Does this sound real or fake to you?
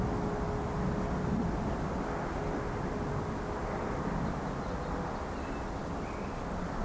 real